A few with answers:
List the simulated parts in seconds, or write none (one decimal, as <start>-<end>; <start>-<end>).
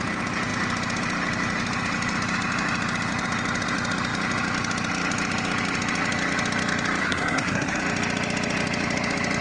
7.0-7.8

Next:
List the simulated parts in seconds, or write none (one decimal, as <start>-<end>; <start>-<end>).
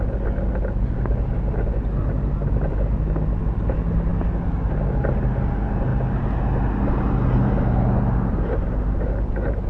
none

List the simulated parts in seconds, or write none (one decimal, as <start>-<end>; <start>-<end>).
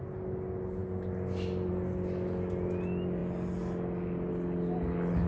none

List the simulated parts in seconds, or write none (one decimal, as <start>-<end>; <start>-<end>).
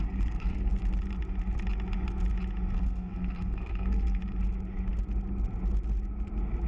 0.0-0.7; 2.7-4.2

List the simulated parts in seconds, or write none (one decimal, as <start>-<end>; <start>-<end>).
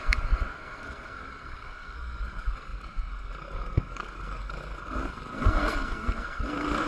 0.0-6.9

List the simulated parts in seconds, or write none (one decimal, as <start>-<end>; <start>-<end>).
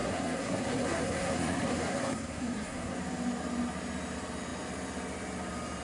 0.0-3.0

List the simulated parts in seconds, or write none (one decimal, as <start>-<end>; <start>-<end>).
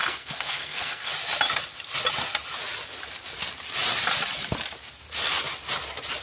0.0-1.1